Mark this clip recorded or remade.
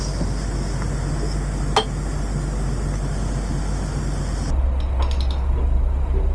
recorded